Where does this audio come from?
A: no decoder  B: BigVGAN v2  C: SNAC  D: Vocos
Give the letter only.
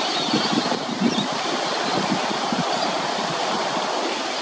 A